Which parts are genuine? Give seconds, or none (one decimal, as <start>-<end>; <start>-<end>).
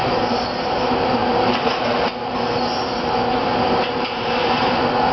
1.2-3.0